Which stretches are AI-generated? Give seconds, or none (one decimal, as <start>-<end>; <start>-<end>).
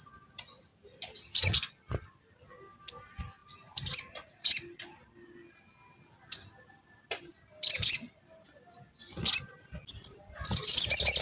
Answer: 3.4-5.5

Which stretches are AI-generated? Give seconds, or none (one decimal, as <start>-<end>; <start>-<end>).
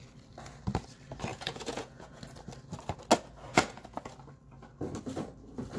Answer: 1.3-2.2; 3.5-4.1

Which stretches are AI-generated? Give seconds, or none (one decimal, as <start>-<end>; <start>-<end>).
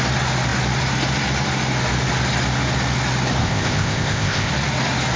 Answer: 3.4-4.5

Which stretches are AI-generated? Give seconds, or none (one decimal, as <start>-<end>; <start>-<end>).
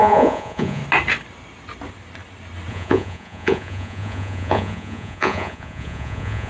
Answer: 0.0-0.8; 2.7-6.5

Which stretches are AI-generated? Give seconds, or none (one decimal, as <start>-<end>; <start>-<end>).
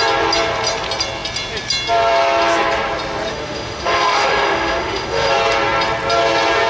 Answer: 3.3-5.3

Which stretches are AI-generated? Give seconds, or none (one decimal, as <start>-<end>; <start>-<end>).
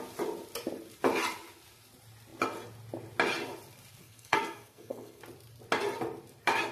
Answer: 4.0-5.2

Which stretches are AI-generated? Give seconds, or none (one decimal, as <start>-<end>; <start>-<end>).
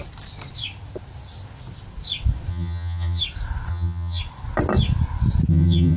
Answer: 2.5-3.2; 3.7-4.2; 5.5-6.0